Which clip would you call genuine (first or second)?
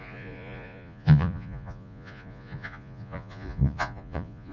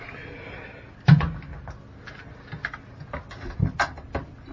second